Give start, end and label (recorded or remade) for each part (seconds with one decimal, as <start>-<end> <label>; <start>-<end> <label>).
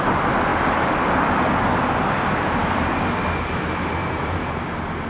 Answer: 0.0-4.0 recorded; 4.0-4.6 remade; 4.6-5.1 recorded